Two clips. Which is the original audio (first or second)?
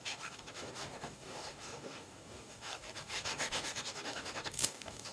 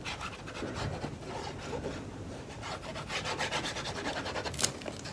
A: second